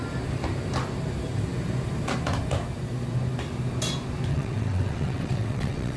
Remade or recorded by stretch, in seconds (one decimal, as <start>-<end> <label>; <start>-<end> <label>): 0.0-4.3 recorded; 4.3-6.0 remade